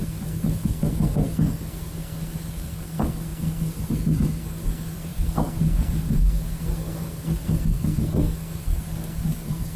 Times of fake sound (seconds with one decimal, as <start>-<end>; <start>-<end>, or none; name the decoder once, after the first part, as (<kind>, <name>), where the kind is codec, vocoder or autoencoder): 0.0-9.8 (codec, SNAC)